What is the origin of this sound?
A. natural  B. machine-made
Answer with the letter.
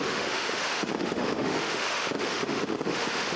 B